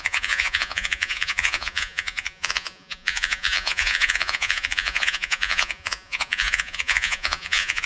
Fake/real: fake